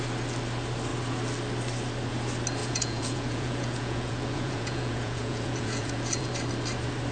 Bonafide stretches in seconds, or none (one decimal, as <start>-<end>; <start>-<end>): 0.0-2.6; 6.3-7.1